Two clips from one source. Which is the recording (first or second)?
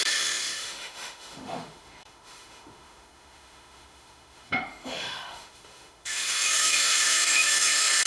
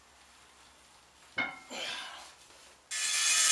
second